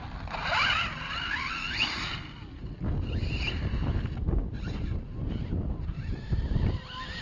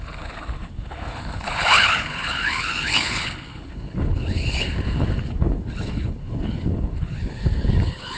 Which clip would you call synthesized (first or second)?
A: second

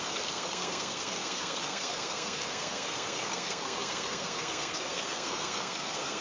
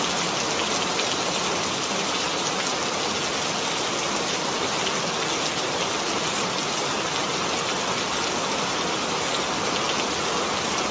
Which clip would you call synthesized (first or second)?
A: first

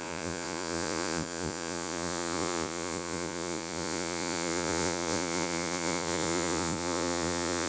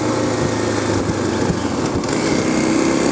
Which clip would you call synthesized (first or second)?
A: first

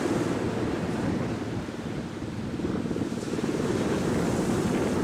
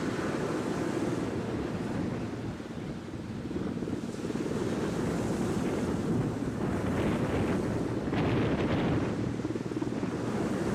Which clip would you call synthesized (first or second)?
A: first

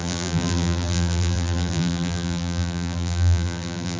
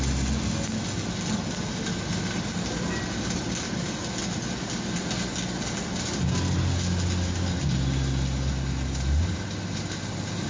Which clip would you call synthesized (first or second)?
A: first